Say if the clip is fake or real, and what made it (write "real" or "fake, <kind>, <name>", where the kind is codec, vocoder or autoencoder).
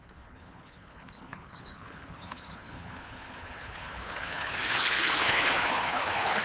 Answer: fake, codec, HILCodec